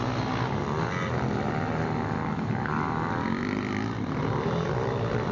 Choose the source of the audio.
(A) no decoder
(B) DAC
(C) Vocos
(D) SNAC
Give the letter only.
A